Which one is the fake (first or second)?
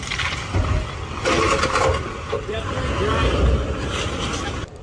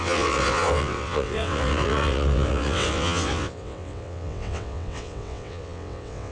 second